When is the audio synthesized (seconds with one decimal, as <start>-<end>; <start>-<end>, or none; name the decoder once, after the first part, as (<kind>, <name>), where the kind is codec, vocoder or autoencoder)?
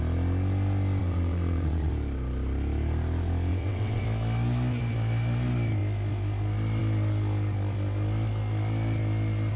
1.0-1.9 (vocoder, WaveNeXt); 3.5-4.0